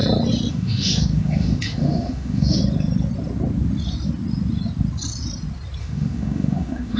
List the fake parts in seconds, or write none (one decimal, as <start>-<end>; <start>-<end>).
0.5-2.6; 5.8-7.0